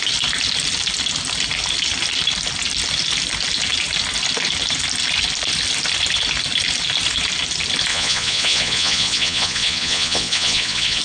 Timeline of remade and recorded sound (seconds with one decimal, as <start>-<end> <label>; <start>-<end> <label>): 0.0-7.9 recorded; 7.9-11.0 remade